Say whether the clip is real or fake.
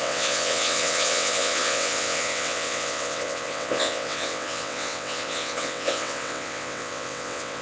fake